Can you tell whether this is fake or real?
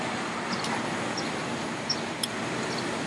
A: real